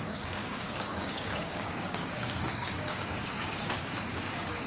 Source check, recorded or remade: remade